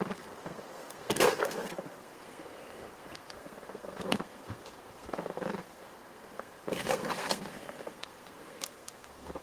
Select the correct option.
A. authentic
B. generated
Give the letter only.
B